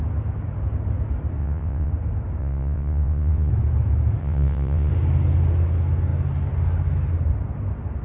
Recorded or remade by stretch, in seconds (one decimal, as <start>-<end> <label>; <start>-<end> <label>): 0.0-1.4 recorded; 1.4-1.9 remade; 1.9-2.4 recorded; 2.4-3.5 remade; 3.5-4.2 recorded; 4.2-4.9 remade; 4.9-8.0 recorded